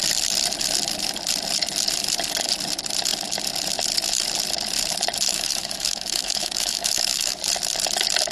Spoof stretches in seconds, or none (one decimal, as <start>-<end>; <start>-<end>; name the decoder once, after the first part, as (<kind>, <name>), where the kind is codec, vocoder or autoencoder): 5.3-7.4 (autoencoder, DAC-VAE)